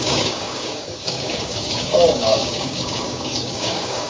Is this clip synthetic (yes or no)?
yes